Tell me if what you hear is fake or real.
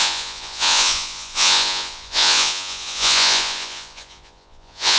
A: fake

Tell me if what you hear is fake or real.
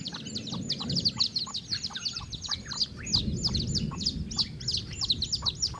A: real